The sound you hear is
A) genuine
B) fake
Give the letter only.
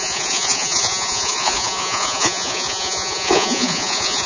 B